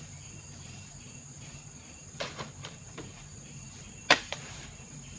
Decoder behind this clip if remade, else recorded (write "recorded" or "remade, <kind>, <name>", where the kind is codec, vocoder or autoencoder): remade, vocoder, BigVGAN v2